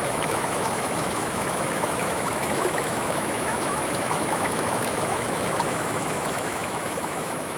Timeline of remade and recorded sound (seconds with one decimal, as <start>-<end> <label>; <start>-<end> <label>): 0.0-7.6 remade